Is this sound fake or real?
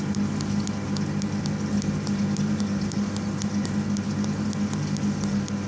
real